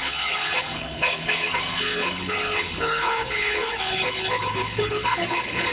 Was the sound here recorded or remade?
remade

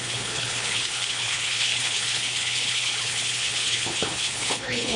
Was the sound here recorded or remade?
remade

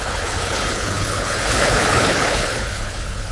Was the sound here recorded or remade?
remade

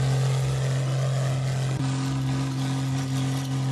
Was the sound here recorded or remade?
recorded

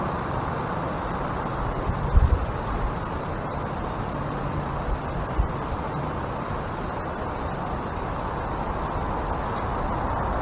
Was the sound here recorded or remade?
recorded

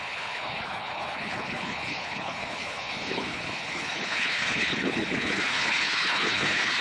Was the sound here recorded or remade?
remade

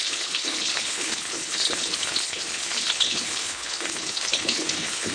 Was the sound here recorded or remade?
remade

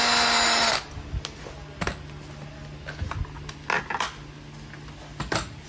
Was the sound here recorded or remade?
recorded